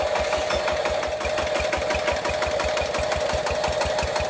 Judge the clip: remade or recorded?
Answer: recorded